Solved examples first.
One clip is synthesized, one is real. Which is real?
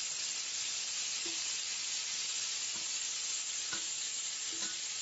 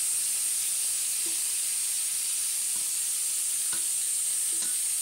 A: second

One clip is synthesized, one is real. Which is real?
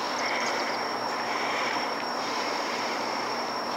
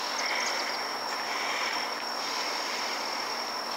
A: second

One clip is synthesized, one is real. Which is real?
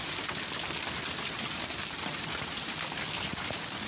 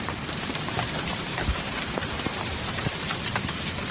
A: first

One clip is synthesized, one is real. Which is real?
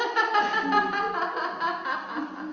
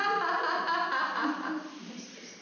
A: first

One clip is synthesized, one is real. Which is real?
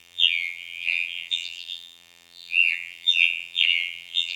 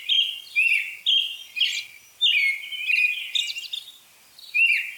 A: second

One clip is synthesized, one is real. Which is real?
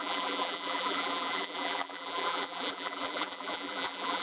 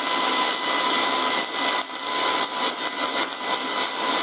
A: second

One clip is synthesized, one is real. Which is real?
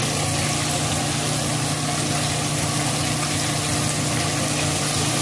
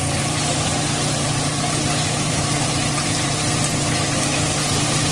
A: first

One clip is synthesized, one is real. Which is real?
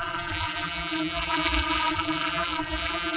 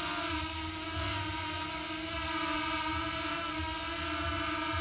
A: second